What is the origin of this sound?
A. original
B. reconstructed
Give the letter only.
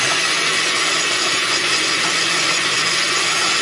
B